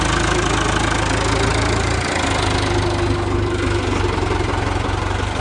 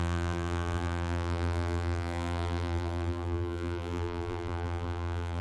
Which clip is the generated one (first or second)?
second